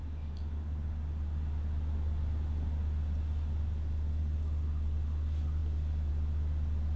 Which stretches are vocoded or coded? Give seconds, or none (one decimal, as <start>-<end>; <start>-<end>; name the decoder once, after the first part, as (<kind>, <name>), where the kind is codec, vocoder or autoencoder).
none